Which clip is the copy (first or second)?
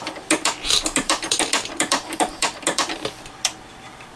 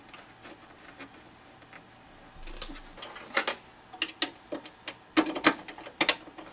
first